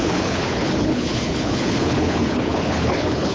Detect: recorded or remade remade